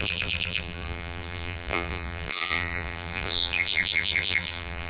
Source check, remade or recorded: remade